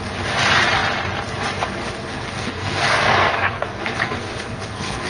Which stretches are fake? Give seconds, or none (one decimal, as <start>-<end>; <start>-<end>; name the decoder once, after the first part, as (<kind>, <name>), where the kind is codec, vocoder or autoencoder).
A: 2.1-5.1 (codec, SNAC)